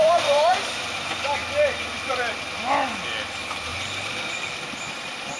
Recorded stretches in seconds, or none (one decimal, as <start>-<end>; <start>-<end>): 0.8-3.7; 4.3-5.4